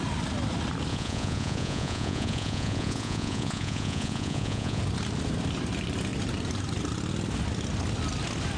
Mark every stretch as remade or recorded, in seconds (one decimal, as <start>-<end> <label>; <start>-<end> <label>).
0.0-0.9 recorded; 0.9-4.8 remade; 4.8-8.6 recorded